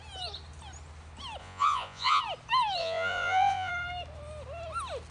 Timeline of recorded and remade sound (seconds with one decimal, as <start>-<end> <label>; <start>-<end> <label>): 0.0-1.4 recorded; 1.4-2.2 remade; 2.2-2.8 recorded; 2.8-3.7 remade; 3.7-5.1 recorded